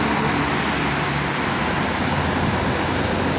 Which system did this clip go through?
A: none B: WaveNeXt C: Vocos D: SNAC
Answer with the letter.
A